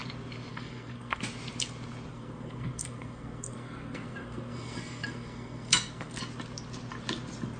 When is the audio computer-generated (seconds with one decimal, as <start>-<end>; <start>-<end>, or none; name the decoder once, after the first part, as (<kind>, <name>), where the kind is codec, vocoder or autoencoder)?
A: 0.5-1.2 (codec, SNAC); 2.1-6.2